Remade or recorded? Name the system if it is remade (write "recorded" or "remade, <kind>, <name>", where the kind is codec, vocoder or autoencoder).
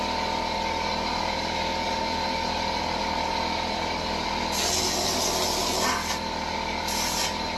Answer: recorded